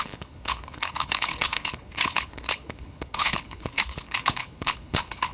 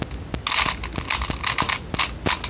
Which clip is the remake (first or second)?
first